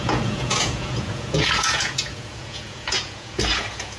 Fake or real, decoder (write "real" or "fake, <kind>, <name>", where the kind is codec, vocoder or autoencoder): fake, vocoder, Vocos